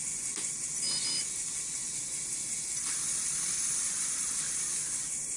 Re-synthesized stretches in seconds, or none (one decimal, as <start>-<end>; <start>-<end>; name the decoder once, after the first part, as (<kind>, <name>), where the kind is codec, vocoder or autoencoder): none